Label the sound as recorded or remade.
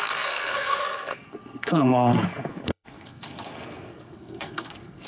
remade